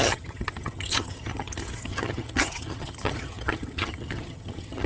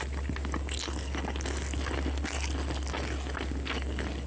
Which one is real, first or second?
second